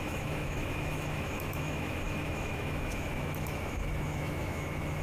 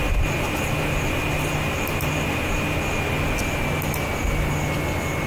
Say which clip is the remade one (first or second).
first